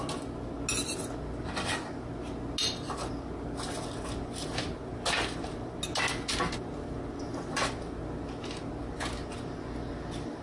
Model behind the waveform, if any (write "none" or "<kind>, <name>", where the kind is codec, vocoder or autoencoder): none